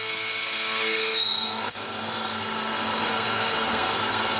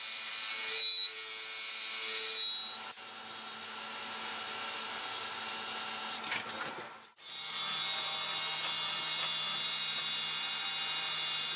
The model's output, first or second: first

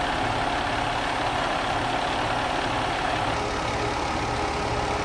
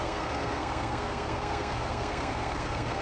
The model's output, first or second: second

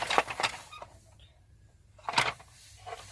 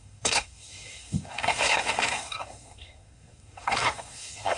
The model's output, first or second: second